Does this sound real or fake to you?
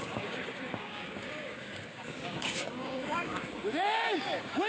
fake